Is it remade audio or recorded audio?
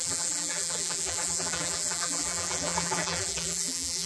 remade